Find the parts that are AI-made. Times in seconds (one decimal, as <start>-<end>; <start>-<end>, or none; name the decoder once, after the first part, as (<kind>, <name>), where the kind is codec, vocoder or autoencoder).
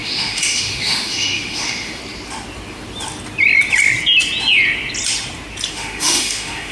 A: 0.0-2.0 (autoencoder, DAC-VAE); 5.7-6.7